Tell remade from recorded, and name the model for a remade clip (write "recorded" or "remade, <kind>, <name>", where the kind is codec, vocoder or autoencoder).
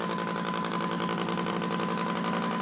recorded